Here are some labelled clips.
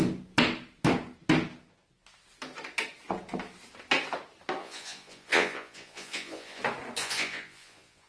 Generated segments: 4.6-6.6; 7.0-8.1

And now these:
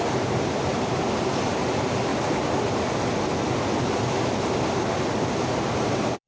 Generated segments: 0.0-2.1; 5.3-6.3

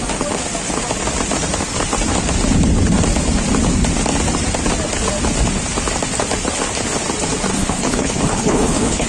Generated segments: 7.5-9.1

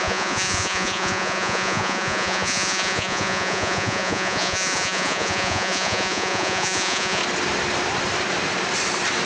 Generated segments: 0.0-7.2

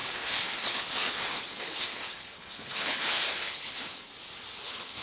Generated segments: 0.0-4.1; 4.6-5.0

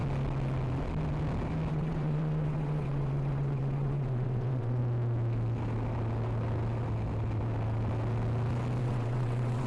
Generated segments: 1.7-4.8; 8.8-9.7

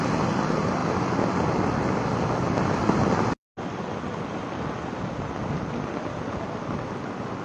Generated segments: none